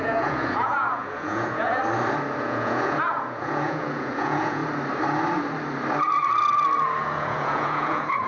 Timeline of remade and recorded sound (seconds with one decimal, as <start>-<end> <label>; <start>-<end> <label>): 0.0-1.8 remade; 1.8-2.4 recorded; 2.4-4.6 remade; 4.6-7.0 recorded; 7.0-8.3 remade